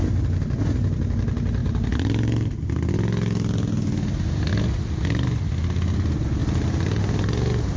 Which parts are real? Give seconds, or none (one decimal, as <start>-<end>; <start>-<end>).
0.0-7.8